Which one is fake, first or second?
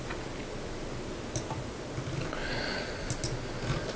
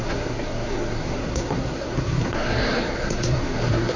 second